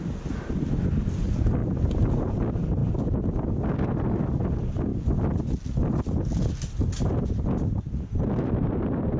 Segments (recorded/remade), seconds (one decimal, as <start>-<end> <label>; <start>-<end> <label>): 0.0-9.2 recorded